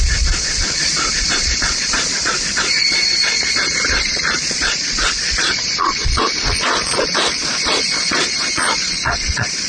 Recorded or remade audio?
remade